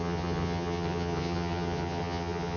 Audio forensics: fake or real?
fake